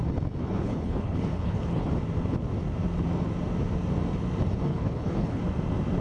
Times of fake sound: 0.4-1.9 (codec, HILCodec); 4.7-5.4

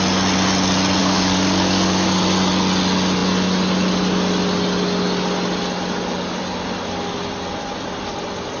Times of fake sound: 1.0-2.2 (codec, DAC)

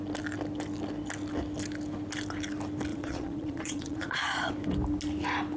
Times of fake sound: 2.9-4.5 (vocoder, Vocos)

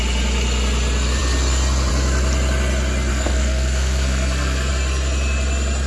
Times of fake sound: 3.1-4.7 (codec, SNAC)

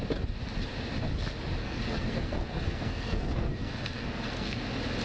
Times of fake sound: 1.6-4.6 (codec, SNAC)

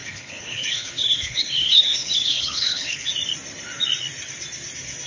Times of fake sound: 0.0-3.1 (codec, HILCodec)

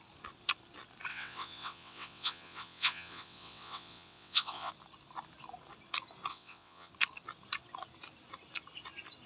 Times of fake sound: 1.1-4.7 (vocoder, WaveNeXt); 6.3-6.9

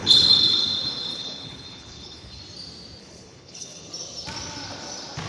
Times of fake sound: 0.0-0.6 (codec, HILCodec); 1.1-2.4; 3.0-3.9